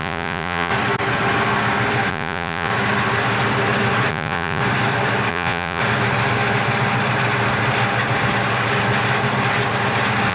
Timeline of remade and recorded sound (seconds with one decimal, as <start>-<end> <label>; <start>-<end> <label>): 0.0-0.7 remade; 0.7-2.1 recorded; 2.1-2.7 remade; 2.7-4.1 recorded; 4.1-4.6 remade; 4.6-5.3 recorded; 5.3-5.8 remade; 5.8-10.3 recorded